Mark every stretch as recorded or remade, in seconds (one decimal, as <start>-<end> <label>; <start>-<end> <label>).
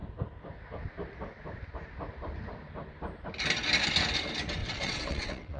0.0-4.6 recorded; 4.6-5.6 remade